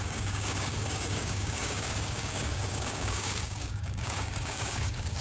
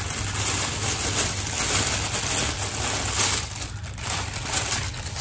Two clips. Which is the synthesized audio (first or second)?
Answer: first